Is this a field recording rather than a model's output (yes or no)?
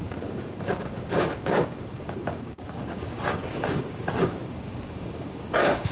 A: no